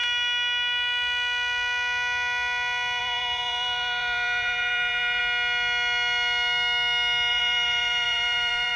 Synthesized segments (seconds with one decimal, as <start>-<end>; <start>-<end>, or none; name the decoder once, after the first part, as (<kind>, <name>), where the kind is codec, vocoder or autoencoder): 3.0-5.2 (vocoder, BigVGAN v2); 7.3-8.8